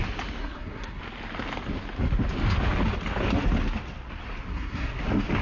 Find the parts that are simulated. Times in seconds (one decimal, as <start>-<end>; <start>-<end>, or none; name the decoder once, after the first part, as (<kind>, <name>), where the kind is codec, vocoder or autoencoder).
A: 0.4-1.0 (codec, SNAC); 4.5-5.0